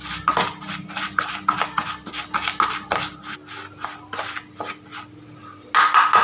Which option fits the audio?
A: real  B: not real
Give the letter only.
A